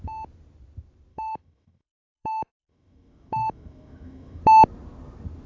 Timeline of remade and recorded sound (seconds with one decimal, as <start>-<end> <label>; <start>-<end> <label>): 0.0-1.1 recorded; 1.1-4.4 remade; 4.4-5.5 recorded